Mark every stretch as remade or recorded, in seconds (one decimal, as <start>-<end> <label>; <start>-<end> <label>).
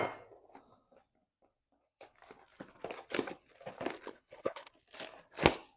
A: 0.0-4.1 recorded; 4.1-4.7 remade; 4.7-5.8 recorded